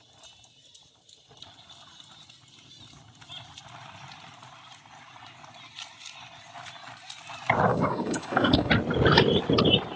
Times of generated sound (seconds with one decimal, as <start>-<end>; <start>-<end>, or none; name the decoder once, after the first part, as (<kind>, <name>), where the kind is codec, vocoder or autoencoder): 7.7-8.7 (codec, DAC)